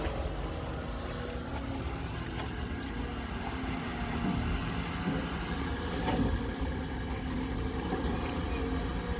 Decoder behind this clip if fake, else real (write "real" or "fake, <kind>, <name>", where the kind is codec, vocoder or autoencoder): real